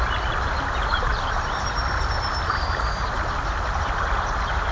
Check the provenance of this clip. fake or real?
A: real